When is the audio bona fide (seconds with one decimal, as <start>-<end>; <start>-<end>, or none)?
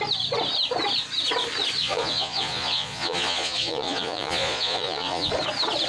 0.0-1.8; 5.3-5.9